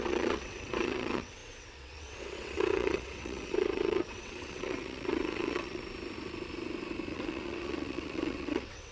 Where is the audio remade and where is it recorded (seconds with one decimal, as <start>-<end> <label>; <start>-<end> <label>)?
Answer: 0.0-5.8 remade; 5.8-7.1 recorded; 7.1-8.9 remade